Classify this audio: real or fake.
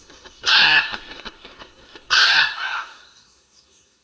fake